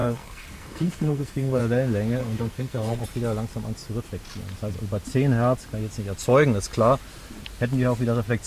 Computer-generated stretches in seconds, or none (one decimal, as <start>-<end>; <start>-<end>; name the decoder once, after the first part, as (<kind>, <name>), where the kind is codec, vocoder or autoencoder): 0.0-1.6 (codec, SNAC); 2.2-3.0